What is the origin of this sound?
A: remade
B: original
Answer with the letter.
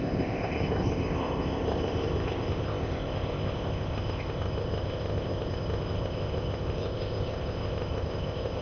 A